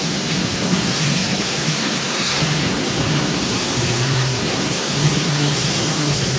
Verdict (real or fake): fake